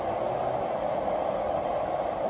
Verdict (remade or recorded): recorded